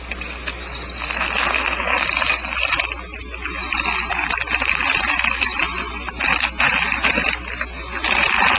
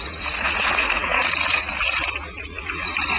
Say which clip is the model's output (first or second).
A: second